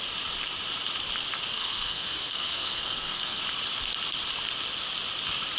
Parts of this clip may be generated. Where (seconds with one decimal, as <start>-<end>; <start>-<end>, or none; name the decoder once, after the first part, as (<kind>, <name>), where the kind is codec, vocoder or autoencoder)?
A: 1.5-3.4 (codec, SNAC)